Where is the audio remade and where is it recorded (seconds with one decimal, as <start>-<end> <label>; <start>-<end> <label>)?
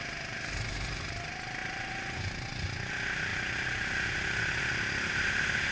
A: 0.0-1.6 recorded; 1.6-2.9 remade; 2.9-5.7 recorded